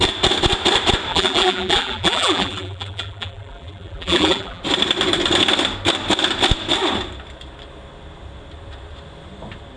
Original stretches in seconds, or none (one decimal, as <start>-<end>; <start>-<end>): 0.0-1.1; 4.6-9.8